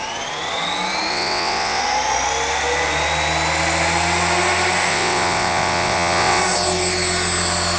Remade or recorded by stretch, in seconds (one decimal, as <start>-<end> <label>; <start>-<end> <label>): 0.0-1.1 recorded; 1.1-1.8 remade; 1.8-4.9 recorded; 4.9-6.4 remade; 6.4-7.8 recorded